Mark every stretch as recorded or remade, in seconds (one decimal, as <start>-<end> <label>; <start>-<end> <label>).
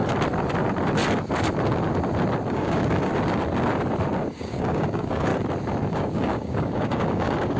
0.0-2.5 recorded; 2.5-3.1 remade; 3.1-4.3 recorded; 4.3-5.3 remade; 5.3-5.9 recorded; 5.9-7.6 remade